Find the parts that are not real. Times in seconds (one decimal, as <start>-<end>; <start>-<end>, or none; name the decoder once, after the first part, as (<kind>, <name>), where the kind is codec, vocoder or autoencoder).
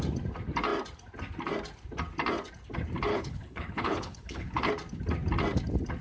3.1-4.7 (codec, HILCodec)